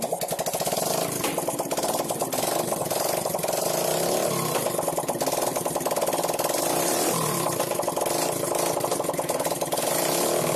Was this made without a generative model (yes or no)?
yes